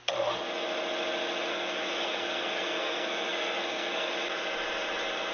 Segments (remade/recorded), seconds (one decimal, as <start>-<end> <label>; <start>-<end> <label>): 0.0-1.5 recorded; 1.5-4.1 remade; 4.1-5.3 recorded